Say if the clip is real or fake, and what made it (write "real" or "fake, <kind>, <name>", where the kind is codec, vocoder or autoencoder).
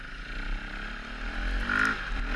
real